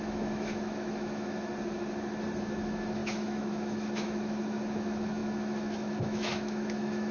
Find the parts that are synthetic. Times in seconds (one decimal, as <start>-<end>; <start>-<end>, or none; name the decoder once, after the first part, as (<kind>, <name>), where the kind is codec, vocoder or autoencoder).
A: 0.0-1.5 (autoencoder, DAC-VAE); 2.4-7.1